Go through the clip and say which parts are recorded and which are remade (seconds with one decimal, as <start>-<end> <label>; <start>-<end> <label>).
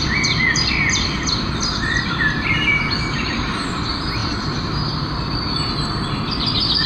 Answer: 0.0-4.2 recorded; 4.2-5.3 remade; 5.3-6.9 recorded